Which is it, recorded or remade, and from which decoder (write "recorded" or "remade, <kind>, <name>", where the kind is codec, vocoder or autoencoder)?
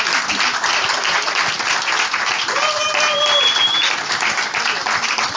recorded